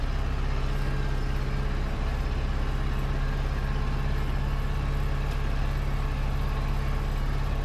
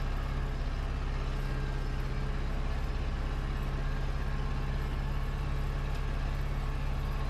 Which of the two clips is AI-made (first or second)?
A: first